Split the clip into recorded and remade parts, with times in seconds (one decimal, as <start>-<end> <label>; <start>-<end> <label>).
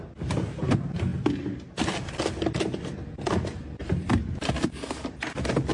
0.0-5.7 recorded